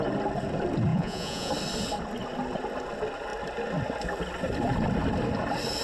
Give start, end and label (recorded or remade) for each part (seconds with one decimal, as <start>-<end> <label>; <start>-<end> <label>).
0.0-0.9 recorded; 0.9-1.5 remade; 1.5-5.8 recorded